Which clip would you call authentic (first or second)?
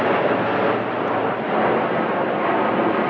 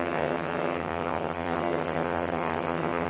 first